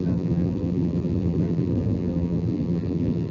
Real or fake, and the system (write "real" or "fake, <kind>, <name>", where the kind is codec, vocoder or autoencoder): fake, vocoder, BigVGAN v2